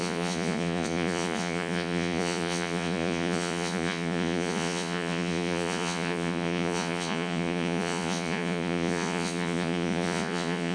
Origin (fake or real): fake